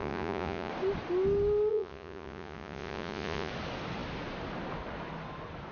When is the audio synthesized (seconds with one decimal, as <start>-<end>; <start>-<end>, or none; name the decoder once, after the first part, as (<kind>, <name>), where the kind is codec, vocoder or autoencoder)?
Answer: 0.0-0.7 (vocoder, Vocos); 1.7-3.5